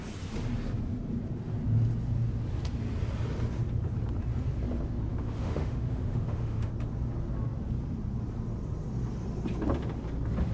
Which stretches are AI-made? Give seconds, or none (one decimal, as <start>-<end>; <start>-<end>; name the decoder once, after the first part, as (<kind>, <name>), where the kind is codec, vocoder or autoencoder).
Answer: 5.1-6.7 (autoencoder, DAC-VAE)